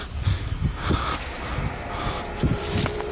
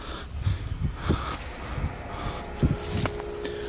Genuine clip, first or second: second